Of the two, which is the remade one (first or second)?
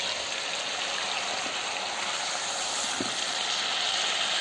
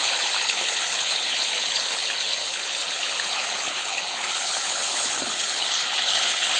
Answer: second